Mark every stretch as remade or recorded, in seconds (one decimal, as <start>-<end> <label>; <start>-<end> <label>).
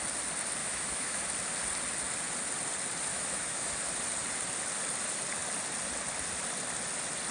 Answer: 0.0-0.6 recorded; 0.6-1.2 remade; 1.2-3.1 recorded; 3.1-3.7 remade; 3.7-7.3 recorded